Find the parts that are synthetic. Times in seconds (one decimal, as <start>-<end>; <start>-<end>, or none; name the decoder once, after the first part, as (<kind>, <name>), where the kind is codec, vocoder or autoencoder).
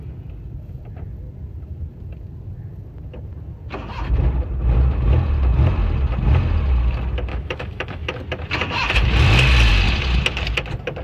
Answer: 7.3-8.2 (autoencoder, DAC-VAE)